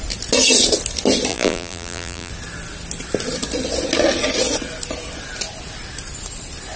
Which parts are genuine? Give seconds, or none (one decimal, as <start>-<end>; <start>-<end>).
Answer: 0.0-1.3; 2.3-6.8